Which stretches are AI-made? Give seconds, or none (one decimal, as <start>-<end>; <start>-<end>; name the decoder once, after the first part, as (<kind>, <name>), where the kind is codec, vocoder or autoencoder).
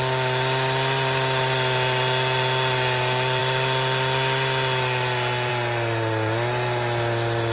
none